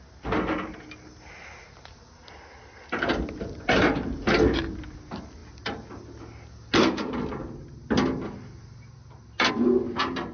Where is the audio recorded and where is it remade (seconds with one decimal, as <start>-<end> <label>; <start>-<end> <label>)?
0.0-10.3 recorded

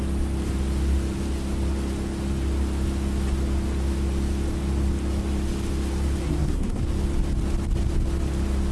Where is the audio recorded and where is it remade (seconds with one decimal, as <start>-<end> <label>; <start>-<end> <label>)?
0.0-6.2 recorded; 6.2-6.8 remade; 6.8-8.7 recorded

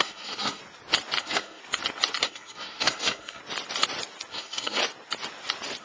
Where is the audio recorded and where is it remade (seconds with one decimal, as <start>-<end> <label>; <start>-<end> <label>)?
0.0-0.6 remade; 0.6-1.2 recorded; 1.2-1.6 remade; 1.6-2.2 recorded; 2.2-3.4 remade; 3.4-4.3 recorded; 4.3-4.8 remade; 4.8-5.8 recorded

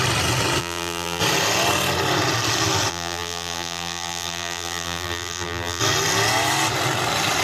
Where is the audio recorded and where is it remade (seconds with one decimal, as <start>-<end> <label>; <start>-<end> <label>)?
0.0-0.6 recorded; 0.6-1.2 remade; 1.2-2.9 recorded; 2.9-5.8 remade; 5.8-7.4 recorded

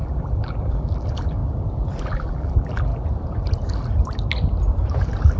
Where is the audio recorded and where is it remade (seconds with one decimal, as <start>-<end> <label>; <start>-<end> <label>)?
0.0-1.4 remade; 1.4-2.0 recorded; 2.0-2.9 remade; 2.9-5.4 recorded

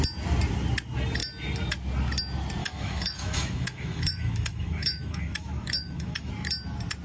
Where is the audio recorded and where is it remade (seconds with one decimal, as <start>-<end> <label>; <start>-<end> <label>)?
0.0-2.6 recorded; 2.6-6.3 remade; 6.3-7.0 recorded

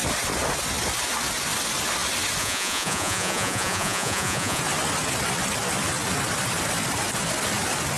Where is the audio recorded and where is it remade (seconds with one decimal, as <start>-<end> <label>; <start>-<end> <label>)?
0.0-2.4 recorded; 2.4-4.6 remade; 4.6-8.0 recorded